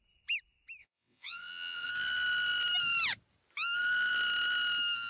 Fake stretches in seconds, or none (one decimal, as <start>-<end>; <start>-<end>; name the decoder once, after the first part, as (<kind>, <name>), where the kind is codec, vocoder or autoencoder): 0.8-1.9 (vocoder, WaveNeXt)